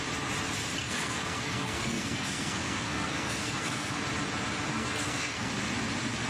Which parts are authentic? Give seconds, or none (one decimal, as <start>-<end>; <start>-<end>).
0.0-0.8; 4.0-4.7; 5.5-6.3